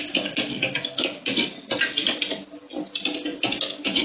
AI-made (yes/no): no